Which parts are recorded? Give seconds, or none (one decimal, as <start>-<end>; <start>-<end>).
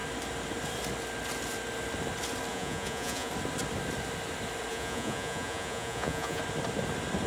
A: 0.0-2.5; 3.3-4.7; 6.4-7.3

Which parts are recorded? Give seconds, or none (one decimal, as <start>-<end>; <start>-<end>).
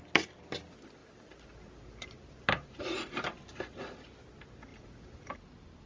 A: 0.0-1.0; 2.8-4.7; 5.4-5.9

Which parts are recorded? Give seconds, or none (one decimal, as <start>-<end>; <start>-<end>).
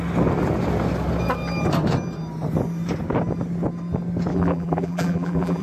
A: 0.0-4.3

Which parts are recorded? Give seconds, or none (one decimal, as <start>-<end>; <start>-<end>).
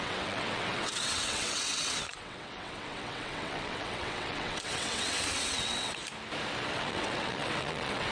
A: 6.0-6.7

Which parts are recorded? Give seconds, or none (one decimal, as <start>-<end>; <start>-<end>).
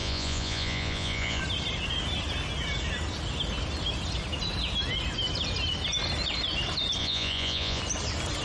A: 1.4-7.0; 7.8-8.4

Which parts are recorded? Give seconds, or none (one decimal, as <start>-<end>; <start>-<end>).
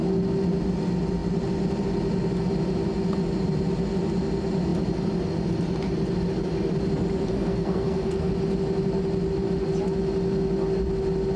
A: 0.0-7.3; 8.3-11.4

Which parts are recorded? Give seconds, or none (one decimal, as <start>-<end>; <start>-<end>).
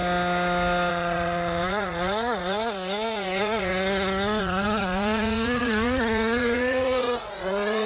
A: 0.0-0.9; 3.7-4.4